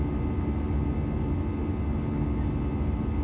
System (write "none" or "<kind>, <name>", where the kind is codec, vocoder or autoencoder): none